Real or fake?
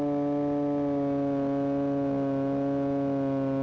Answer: real